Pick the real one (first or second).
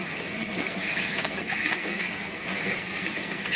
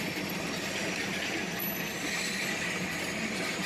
second